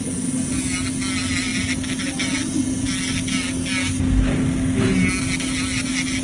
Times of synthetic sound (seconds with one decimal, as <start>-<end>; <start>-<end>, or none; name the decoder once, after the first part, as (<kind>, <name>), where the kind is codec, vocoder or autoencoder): none